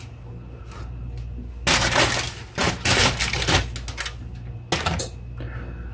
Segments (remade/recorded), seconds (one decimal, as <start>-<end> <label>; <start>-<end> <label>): 0.0-5.9 recorded